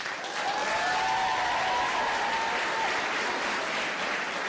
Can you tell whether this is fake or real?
real